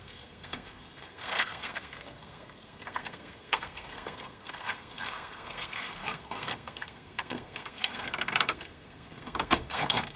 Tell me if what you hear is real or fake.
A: fake